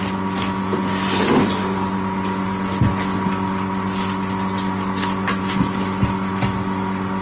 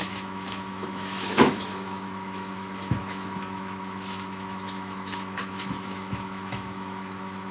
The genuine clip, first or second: first